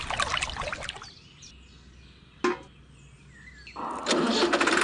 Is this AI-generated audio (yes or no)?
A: no